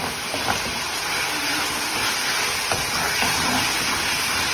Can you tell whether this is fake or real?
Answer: real